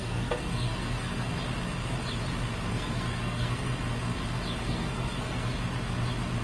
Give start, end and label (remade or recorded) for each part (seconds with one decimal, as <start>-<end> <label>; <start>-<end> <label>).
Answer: 0.0-1.3 remade; 1.3-2.7 recorded; 2.7-3.7 remade; 3.7-4.6 recorded; 4.6-5.5 remade; 5.5-6.4 recorded